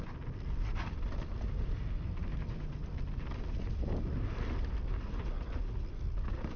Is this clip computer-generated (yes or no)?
no